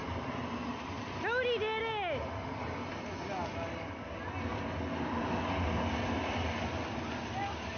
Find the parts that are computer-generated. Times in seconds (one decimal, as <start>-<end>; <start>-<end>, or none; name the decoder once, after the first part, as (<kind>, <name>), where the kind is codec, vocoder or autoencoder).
none